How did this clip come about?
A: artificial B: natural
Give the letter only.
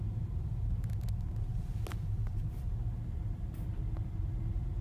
B